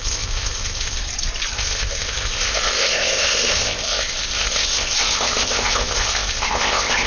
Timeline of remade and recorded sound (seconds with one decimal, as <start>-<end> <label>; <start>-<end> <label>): 0.0-1.0 remade; 1.0-1.5 recorded; 1.5-7.1 remade